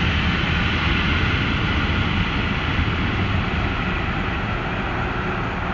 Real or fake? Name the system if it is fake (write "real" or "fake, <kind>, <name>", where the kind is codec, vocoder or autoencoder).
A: real